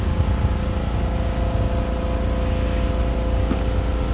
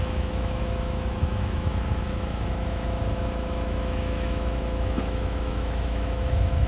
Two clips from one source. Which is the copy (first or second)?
second